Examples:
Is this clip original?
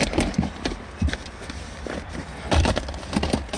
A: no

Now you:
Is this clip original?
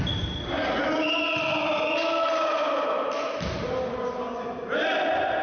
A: yes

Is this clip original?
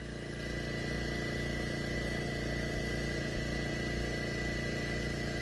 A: yes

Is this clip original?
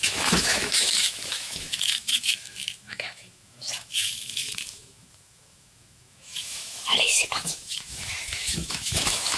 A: no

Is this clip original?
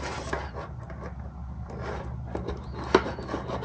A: yes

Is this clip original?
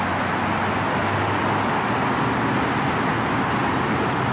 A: yes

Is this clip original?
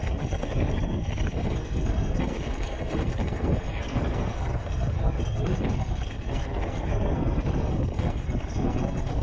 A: no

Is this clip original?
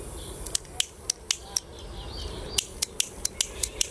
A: yes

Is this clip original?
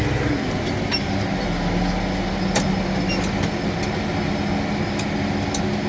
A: yes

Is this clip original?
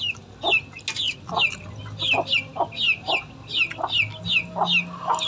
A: yes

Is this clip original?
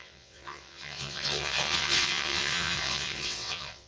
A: no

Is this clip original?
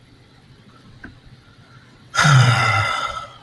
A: no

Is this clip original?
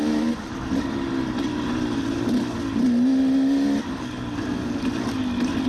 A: yes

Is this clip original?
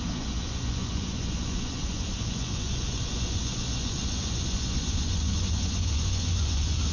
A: no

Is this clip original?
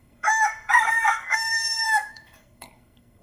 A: no